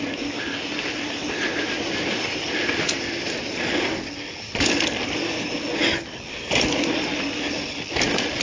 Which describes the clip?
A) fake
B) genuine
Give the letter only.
B